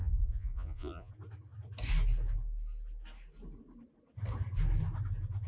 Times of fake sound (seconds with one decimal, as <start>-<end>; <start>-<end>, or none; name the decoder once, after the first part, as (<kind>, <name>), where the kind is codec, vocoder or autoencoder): 0.0-1.1 (vocoder, Vocos)